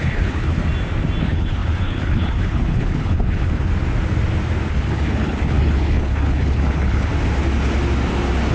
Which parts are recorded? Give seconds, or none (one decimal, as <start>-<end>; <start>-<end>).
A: 0.6-1.2; 3.7-4.7; 7.1-8.5